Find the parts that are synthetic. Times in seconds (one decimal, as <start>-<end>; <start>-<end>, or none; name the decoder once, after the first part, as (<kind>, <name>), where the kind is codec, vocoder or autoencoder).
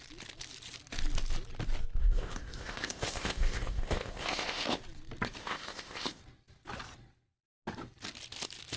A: 2.0-4.8 (codec, ZipCodec); 5.4-6.2